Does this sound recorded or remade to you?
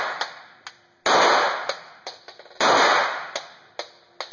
recorded